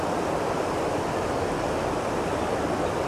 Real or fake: real